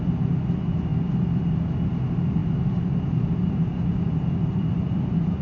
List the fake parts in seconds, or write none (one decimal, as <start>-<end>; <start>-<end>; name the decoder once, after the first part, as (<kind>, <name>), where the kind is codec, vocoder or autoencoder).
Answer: 2.4-3.5 (vocoder, BigVGAN v2); 3.9-5.4